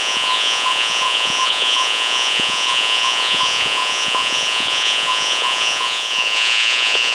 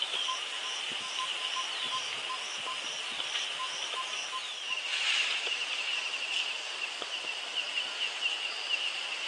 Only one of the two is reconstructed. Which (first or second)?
first